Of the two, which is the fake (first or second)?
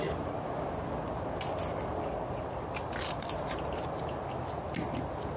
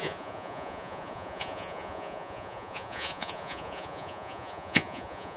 second